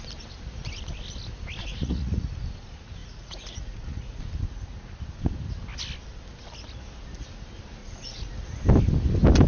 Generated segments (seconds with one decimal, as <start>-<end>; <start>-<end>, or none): 1.6-2.3; 3.0-4.2; 7.8-8.3